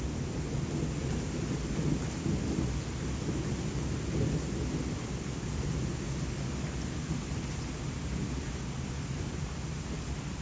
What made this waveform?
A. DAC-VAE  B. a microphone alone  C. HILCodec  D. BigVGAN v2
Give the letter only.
B